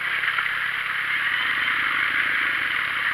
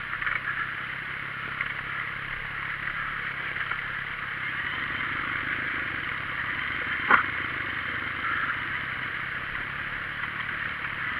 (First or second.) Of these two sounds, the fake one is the second